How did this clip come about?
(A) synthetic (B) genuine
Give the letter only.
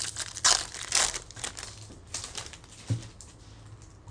B